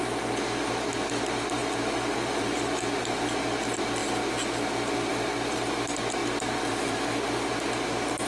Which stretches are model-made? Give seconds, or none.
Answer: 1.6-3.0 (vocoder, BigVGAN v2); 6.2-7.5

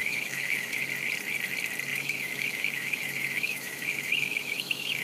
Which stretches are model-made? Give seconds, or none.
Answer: 0.0-0.8 (autoencoder, DAC-VAE); 1.9-5.0

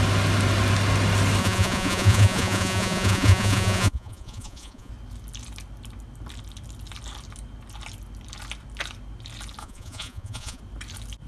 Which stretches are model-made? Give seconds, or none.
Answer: 1.4-4.9 (vocoder, Vocos); 9.6-10.6